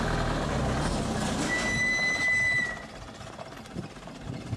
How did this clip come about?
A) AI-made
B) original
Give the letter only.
B